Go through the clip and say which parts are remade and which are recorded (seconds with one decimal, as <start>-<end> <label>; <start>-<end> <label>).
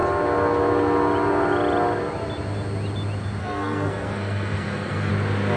0.0-3.4 recorded; 3.4-5.1 remade; 5.1-5.6 recorded